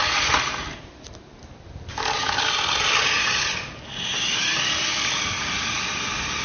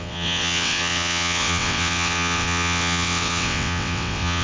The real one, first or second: first